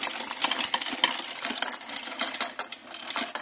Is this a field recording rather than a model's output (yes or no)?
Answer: yes